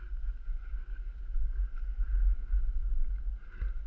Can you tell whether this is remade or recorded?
recorded